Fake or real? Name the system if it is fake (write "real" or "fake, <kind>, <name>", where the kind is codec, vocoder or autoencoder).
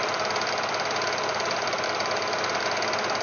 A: real